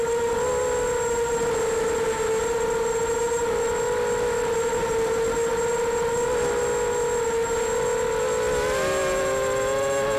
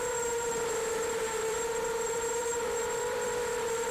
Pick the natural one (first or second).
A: first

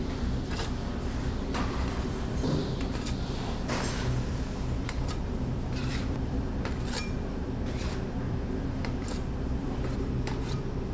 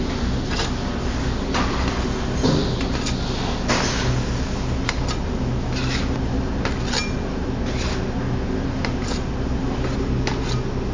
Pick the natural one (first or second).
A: second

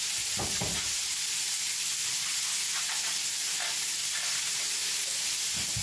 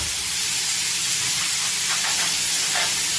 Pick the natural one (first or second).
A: first